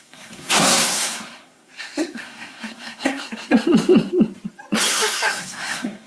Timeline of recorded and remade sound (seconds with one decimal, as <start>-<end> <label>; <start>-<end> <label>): 0.0-3.5 remade; 3.5-4.9 recorded; 4.9-6.1 remade